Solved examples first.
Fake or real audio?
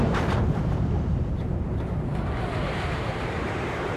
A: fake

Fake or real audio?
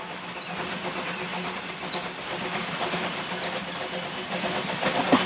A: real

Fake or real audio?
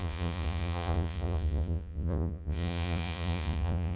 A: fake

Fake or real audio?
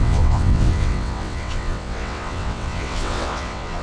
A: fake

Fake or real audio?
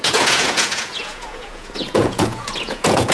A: fake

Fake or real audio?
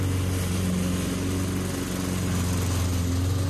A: real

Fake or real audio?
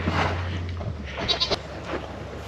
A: real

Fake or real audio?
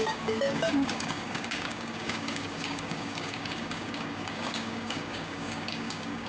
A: fake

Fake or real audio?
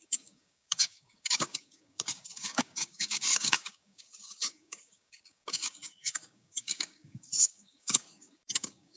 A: fake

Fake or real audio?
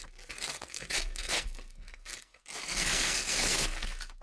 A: fake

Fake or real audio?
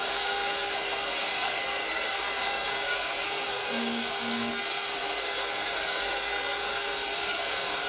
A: fake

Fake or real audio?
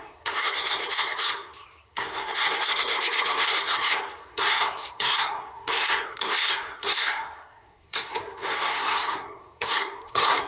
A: fake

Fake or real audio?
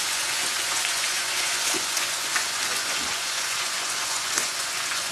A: fake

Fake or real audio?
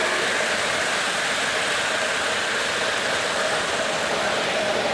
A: real